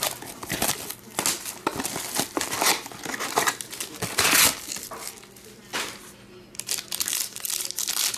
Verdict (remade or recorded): recorded